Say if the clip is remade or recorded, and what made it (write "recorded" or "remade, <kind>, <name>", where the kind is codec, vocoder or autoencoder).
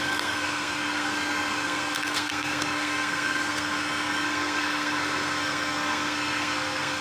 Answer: remade, codec, SNAC